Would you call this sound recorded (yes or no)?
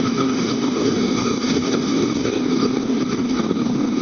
no